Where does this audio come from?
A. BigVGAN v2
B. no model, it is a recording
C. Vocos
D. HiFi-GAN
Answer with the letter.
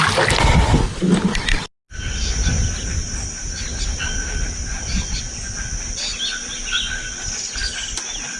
B